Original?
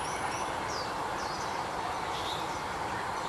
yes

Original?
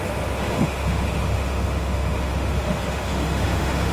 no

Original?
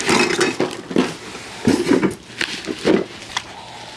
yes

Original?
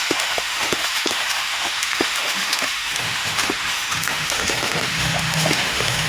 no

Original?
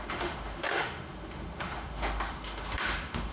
no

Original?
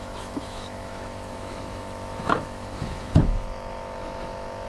no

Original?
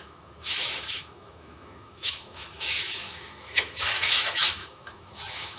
no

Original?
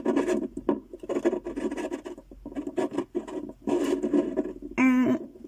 yes